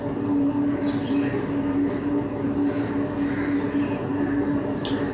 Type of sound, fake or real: real